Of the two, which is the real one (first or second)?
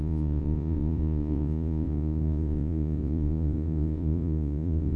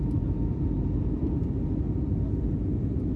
second